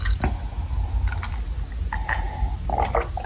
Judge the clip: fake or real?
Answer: real